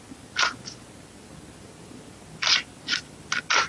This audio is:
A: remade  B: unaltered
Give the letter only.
B